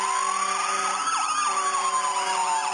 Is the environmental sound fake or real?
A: real